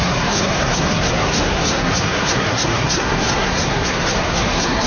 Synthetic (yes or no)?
yes